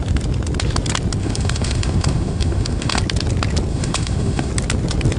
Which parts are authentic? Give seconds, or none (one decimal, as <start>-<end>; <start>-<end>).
0.0-1.2; 3.0-3.7; 4.5-5.2